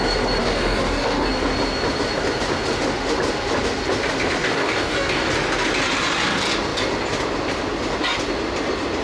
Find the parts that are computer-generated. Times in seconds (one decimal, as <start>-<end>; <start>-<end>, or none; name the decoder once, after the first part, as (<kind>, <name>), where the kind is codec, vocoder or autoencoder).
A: 0.4-1.3 (codec, DAC); 4.4-5.3